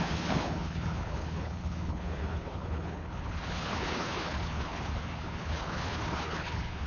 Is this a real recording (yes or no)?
no